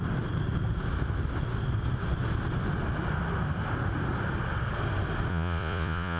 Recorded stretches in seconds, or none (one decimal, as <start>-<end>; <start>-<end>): 0.0-5.3